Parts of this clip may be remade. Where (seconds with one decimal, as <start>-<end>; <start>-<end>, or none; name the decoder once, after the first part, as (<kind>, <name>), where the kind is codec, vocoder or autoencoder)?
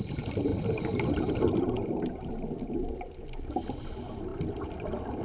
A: 0.5-2.3 (vocoder, BigVGAN v2)